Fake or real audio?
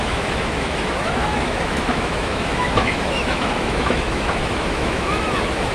fake